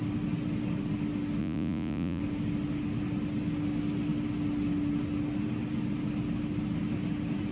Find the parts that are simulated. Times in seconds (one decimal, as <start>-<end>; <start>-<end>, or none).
1.4-2.2